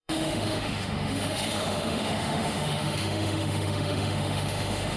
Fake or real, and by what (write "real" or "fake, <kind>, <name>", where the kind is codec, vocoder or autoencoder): fake, autoencoder, DAC-VAE